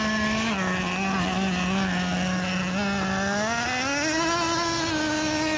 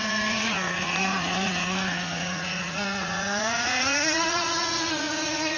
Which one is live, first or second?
first